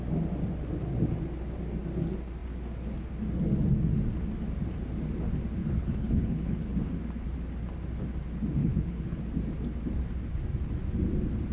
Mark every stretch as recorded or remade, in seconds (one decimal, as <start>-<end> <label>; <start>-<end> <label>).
0.0-5.6 recorded; 5.6-6.9 remade; 6.9-8.6 recorded; 8.6-9.2 remade; 9.2-11.5 recorded